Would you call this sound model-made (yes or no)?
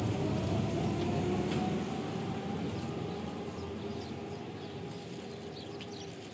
no